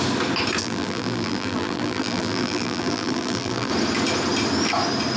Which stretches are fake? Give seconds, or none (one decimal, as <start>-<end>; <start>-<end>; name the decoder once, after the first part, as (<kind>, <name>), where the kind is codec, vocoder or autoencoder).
0.6-3.7 (vocoder, BigVGAN v2)

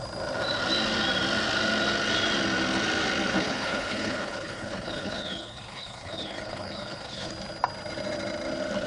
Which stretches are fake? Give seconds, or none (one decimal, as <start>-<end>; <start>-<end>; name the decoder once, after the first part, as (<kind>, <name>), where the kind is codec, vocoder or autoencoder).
3.3-7.3 (codec, HILCodec)

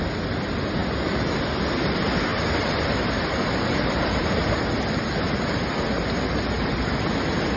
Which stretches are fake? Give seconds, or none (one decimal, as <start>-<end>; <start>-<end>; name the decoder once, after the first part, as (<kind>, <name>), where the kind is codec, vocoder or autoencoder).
2.3-4.7 (vocoder, BigVGAN v2); 5.9-6.7

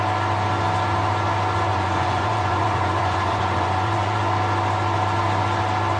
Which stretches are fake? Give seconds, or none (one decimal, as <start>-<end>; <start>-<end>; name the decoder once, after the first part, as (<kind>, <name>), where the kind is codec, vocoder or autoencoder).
1.7-4.2 (vocoder, Vocos)

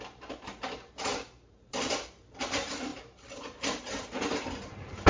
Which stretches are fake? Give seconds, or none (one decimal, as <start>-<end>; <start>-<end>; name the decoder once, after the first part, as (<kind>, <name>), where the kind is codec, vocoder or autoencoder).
0.0-5.1 (vocoder, BigVGAN v2)

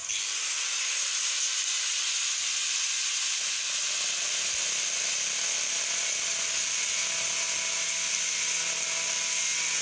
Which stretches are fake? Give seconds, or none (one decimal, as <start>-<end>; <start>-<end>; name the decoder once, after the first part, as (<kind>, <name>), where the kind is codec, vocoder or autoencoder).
none